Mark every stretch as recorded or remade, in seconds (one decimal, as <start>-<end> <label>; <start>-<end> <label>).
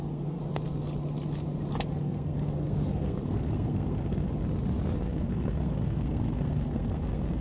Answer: 0.0-0.4 remade; 0.4-2.0 recorded; 2.0-4.3 remade; 4.3-5.0 recorded; 5.0-7.4 remade